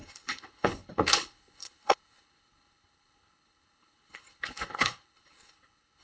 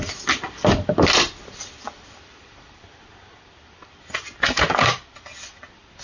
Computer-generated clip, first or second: first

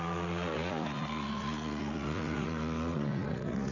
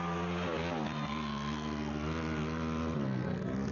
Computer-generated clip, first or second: first